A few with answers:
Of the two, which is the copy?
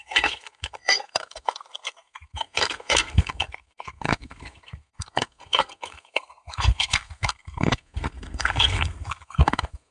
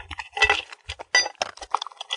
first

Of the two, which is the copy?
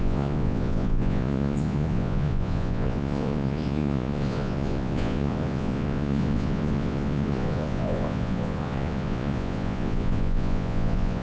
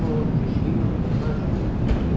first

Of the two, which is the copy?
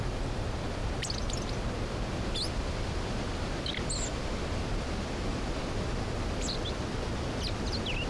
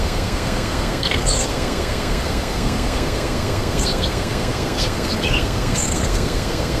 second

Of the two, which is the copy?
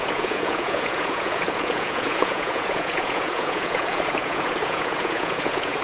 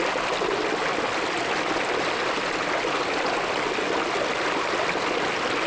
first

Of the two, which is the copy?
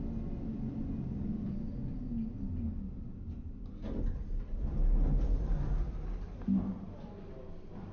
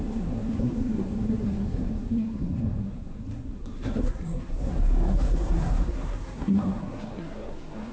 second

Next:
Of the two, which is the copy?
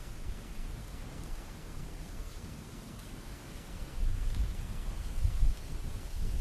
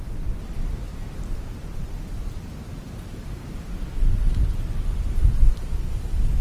first